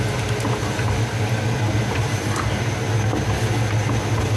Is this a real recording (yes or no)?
yes